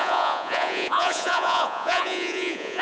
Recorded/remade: remade